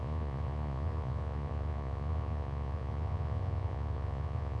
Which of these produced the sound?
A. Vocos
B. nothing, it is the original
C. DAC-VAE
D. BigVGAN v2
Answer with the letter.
A